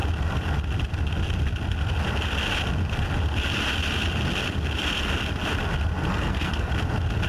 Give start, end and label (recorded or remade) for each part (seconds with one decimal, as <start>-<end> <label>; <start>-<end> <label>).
0.0-6.1 recorded; 6.1-6.7 remade; 6.7-7.3 recorded